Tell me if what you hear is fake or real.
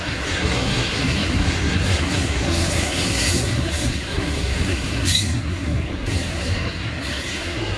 fake